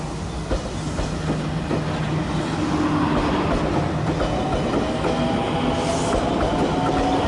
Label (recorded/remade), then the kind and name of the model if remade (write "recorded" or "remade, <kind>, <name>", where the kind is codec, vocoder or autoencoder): recorded